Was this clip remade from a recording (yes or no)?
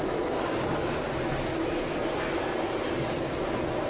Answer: no